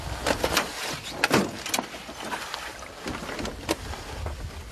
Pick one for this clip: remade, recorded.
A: remade